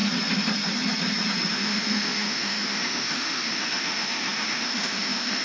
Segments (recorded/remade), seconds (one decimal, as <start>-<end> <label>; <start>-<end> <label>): 0.0-1.5 recorded; 1.5-5.4 remade